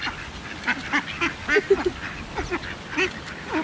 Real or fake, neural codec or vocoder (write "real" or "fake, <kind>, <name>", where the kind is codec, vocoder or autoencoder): real